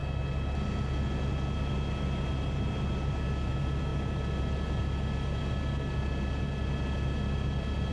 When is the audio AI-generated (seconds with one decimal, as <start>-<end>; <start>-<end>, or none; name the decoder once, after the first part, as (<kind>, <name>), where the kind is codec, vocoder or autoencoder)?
none

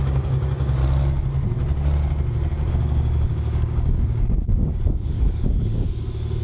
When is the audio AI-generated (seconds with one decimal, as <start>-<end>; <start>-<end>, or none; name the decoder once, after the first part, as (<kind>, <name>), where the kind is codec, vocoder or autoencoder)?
0.0-0.8 (codec, DAC); 2.7-6.4